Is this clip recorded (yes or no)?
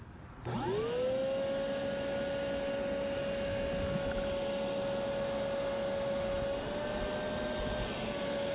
yes